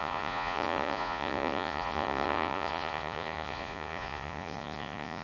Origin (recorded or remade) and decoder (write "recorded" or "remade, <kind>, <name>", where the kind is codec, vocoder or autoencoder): remade, vocoder, Vocos